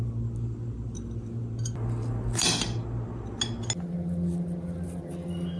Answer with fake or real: real